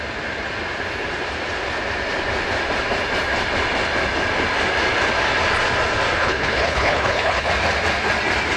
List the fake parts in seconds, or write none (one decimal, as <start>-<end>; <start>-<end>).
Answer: 6.2-7.5